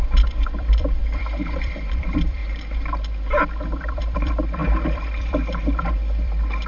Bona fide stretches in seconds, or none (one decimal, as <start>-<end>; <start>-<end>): 2.4-3.8